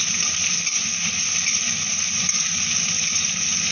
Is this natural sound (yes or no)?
yes